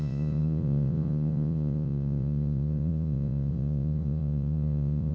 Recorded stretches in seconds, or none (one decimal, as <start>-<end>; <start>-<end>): none